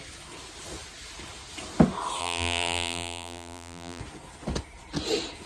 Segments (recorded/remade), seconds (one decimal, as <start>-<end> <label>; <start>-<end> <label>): 0.0-2.2 recorded; 2.2-4.0 remade; 4.0-5.5 recorded